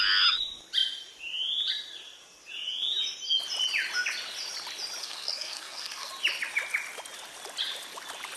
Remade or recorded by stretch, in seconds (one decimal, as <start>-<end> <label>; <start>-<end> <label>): 0.0-5.0 recorded; 5.0-6.1 remade; 6.1-8.4 recorded